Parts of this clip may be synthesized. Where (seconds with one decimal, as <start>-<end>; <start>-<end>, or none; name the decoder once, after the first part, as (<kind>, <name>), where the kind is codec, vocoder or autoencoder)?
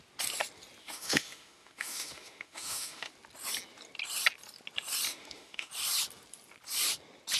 0.8-3.1 (autoencoder, DAC-VAE); 5.1-5.7